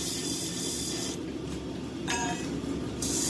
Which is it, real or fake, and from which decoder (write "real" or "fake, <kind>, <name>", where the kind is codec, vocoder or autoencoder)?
fake, vocoder, BigVGAN v2